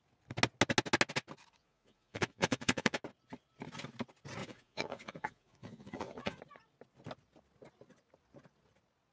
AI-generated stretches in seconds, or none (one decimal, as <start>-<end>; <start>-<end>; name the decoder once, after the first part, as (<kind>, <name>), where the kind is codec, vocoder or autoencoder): 1.6-3.0 (vocoder, Vocos); 4.4-6.4